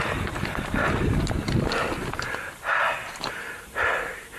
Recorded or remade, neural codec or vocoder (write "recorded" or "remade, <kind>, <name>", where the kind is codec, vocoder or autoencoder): recorded